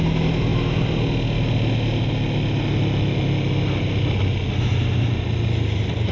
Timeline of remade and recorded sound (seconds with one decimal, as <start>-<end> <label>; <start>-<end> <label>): 0.0-6.1 recorded